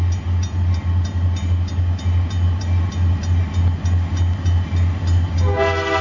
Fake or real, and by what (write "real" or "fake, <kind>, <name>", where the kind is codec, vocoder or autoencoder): real